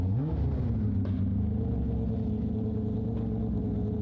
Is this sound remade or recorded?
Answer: recorded